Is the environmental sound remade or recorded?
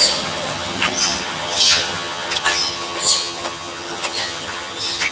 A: remade